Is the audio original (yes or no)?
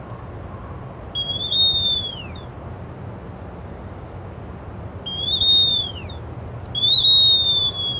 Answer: yes